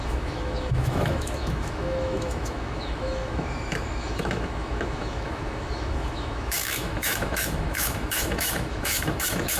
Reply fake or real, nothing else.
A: fake